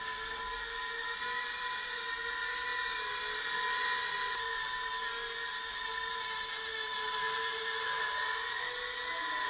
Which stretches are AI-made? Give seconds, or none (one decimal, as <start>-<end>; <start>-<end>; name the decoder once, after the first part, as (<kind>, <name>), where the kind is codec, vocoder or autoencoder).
none